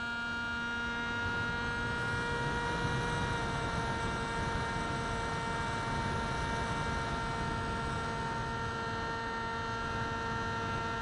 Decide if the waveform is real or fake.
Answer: real